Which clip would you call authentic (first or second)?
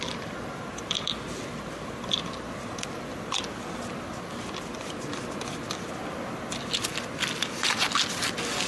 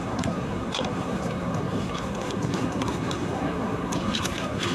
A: first